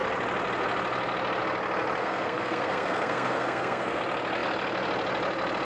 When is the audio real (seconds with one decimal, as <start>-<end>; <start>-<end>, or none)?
0.0-2.0; 4.0-5.6